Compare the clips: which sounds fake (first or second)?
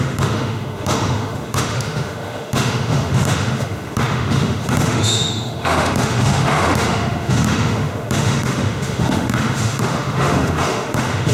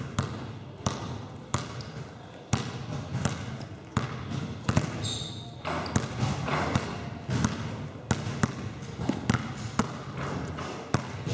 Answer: first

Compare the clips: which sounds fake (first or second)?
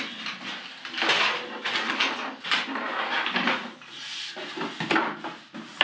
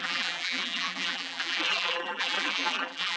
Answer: second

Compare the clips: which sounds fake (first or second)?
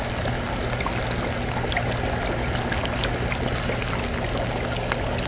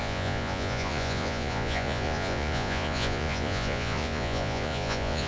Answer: second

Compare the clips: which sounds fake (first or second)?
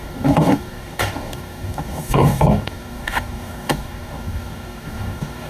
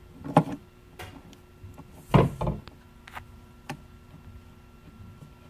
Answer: first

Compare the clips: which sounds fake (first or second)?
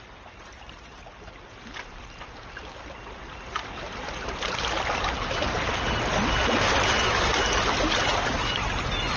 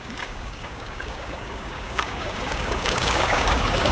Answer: second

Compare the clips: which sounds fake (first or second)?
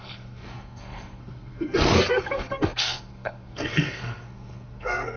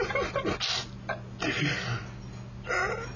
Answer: first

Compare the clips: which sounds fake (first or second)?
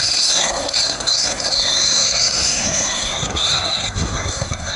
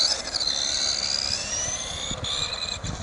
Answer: first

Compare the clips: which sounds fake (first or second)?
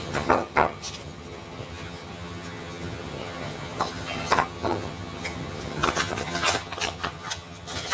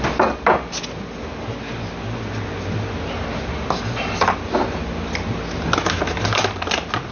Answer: first